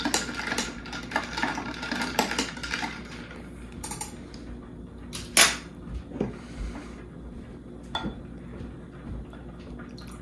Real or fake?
real